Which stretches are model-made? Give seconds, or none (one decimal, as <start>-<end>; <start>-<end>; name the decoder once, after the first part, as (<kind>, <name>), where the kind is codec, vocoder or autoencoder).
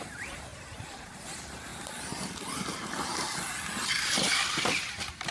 0.0-1.7 (vocoder, BigVGAN v2); 3.9-5.3